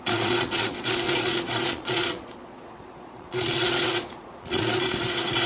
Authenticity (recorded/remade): remade